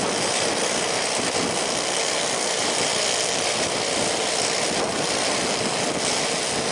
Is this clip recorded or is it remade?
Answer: recorded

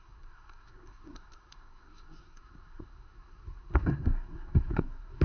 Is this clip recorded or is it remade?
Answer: remade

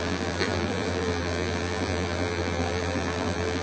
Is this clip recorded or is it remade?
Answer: remade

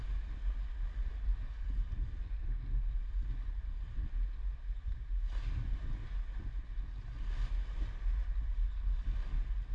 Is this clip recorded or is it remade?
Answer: recorded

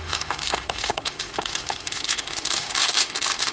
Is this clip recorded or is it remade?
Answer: remade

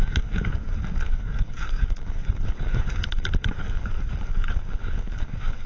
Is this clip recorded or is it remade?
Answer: remade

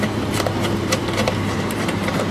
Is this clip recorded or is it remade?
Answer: remade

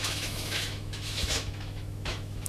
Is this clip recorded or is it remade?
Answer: remade